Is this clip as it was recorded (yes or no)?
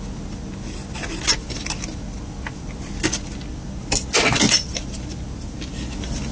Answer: yes